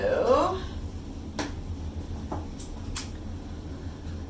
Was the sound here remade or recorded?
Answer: recorded